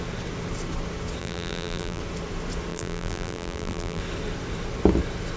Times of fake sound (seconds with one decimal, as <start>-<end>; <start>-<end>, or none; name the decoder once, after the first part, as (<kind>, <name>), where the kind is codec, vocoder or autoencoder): 1.2-2.0 (vocoder, BigVGAN v2); 2.7-4.0